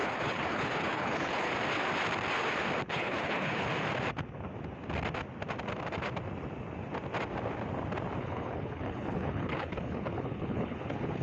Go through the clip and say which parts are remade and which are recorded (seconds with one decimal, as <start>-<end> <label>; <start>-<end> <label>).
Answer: 0.0-1.5 remade; 1.5-2.9 recorded; 2.9-3.7 remade; 3.7-8.2 recorded; 8.2-11.2 remade